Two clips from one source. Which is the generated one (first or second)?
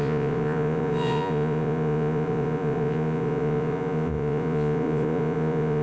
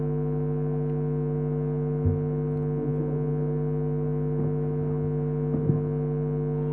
first